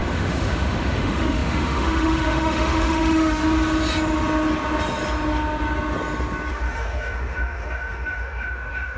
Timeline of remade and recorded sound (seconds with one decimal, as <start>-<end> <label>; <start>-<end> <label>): 0.0-3.4 remade; 3.4-6.5 recorded; 6.5-9.0 remade